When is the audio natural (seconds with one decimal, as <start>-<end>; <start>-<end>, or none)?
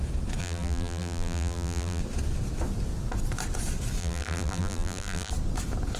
0.0-0.4; 2.0-4.0; 5.3-6.0